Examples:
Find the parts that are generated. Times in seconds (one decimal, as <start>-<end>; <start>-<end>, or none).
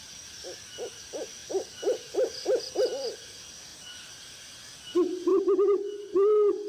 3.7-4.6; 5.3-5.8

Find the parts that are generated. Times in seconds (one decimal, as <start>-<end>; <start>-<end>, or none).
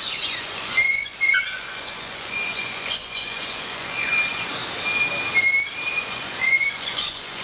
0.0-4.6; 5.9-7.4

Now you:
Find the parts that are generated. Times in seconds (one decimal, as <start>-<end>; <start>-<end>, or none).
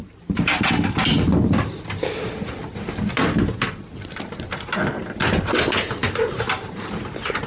0.0-1.1; 5.6-7.5